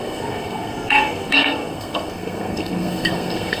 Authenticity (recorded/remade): remade